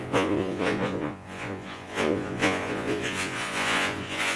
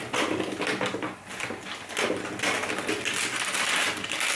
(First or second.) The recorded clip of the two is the second